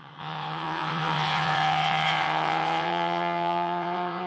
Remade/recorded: remade